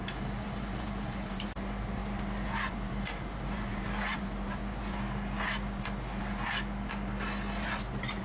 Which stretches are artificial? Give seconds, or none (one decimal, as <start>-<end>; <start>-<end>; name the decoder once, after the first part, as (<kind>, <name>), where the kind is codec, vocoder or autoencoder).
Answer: 0.0-2.0 (vocoder, BigVGAN v2); 2.7-4.6